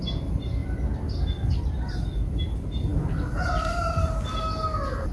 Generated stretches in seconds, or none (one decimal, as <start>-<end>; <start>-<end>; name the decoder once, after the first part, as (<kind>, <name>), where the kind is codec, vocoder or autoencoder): none